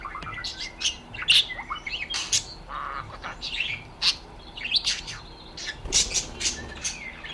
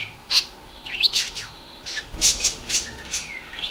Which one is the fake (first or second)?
second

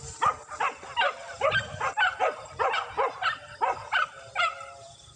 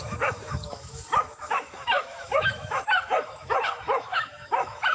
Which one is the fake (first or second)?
second